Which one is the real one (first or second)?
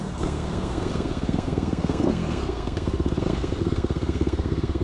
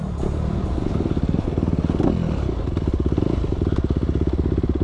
second